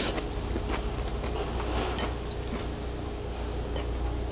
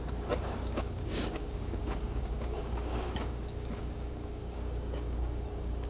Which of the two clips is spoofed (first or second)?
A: second